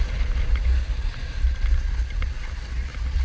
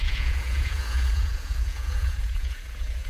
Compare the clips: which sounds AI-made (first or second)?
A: second